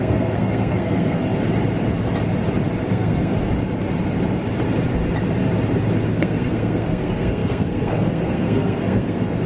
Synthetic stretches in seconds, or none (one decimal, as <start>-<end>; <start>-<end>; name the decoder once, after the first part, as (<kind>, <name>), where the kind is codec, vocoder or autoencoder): 0.0-1.2 (codec, SNAC); 2.9-3.3; 6.1-9.5